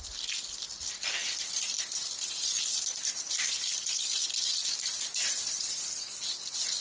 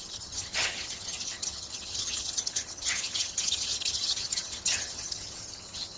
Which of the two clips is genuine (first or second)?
first